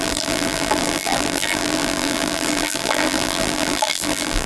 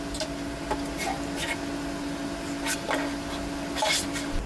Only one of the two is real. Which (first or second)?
second